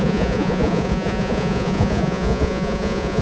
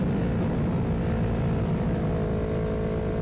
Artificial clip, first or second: first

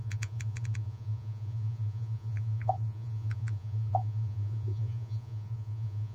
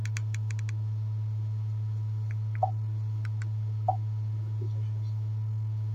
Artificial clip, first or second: first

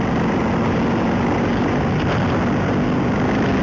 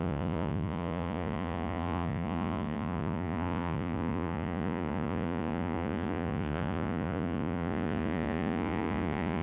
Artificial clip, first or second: second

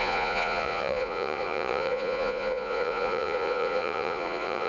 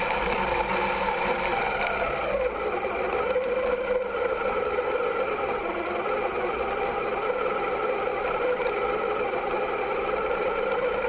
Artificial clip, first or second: first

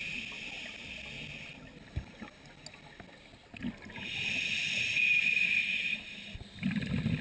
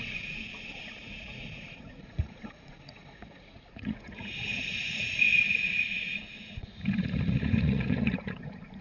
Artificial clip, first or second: second